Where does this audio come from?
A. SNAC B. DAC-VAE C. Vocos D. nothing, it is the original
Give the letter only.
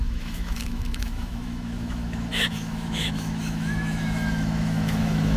B